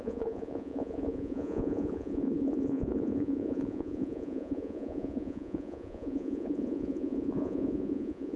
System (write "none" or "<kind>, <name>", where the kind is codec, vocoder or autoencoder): vocoder, Vocos